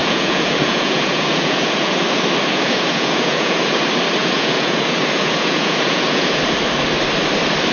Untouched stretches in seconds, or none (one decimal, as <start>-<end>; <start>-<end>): 2.0-2.5; 3.8-4.2; 6.4-7.7